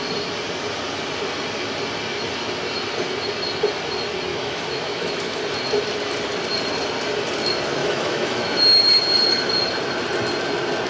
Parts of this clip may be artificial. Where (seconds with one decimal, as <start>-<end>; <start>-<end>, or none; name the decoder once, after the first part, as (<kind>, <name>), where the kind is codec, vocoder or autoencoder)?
4.3-5.4 (autoencoder, DAC-VAE); 7.8-8.6